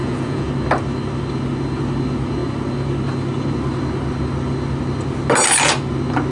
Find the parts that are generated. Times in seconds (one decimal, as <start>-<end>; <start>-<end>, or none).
0.0-0.5